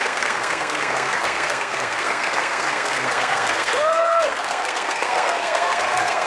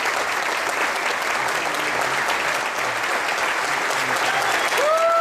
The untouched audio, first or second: second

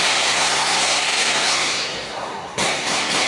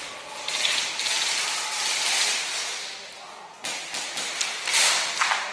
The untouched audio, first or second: second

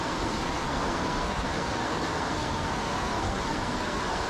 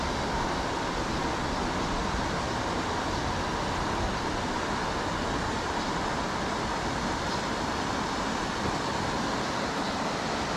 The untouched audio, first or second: second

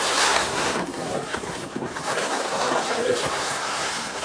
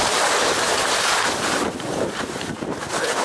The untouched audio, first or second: second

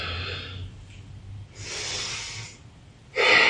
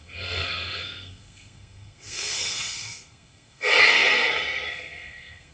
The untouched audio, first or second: first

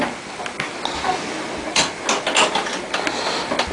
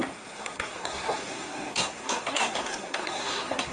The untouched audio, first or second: first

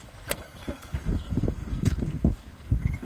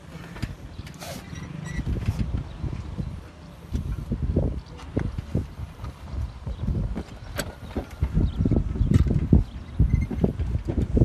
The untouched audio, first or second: second